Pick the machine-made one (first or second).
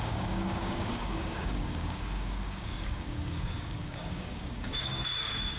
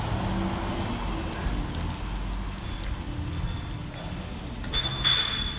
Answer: first